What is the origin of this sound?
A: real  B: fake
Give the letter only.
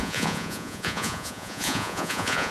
B